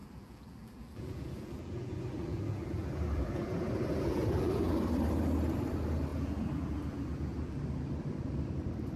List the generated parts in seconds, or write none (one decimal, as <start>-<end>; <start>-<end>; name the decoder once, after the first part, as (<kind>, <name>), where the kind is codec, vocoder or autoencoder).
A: 0.0-4.8 (vocoder, BigVGAN v2); 6.1-7.6